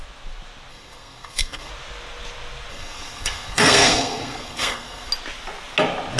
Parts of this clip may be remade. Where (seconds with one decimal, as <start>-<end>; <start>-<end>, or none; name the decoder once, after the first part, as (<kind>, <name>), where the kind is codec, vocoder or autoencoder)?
0.7-1.7 (codec, SNAC); 2.7-5.1